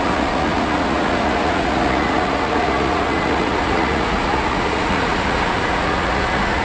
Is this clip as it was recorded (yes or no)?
no